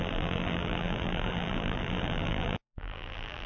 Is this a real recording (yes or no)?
no